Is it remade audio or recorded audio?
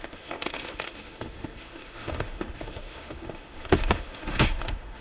remade